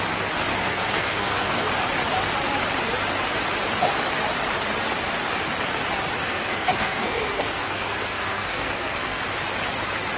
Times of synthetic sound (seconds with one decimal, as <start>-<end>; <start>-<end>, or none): 0.5-1.7; 6.2-9.2